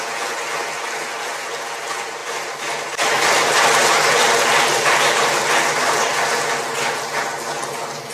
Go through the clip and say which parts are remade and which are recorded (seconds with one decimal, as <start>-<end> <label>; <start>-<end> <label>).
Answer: 0.0-2.2 recorded; 2.2-3.2 remade; 3.2-4.7 recorded; 4.7-6.1 remade; 6.1-8.1 recorded